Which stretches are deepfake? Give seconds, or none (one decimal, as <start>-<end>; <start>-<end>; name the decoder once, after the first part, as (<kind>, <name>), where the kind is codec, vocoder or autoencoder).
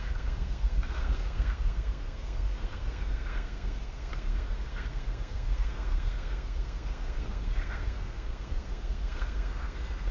0.0-10.1 (codec, SNAC)